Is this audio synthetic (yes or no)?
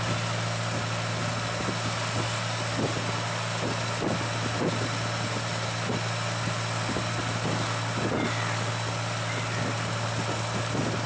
no